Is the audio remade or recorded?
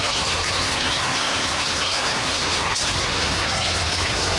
remade